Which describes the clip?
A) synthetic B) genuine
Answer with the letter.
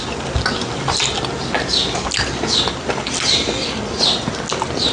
B